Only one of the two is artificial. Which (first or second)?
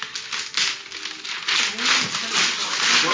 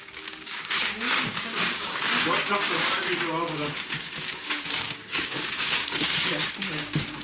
second